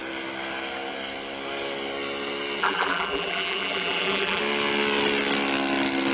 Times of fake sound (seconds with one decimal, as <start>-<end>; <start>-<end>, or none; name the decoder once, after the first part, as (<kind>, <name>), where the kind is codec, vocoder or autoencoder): 2.6-4.4 (vocoder, BigVGAN v2)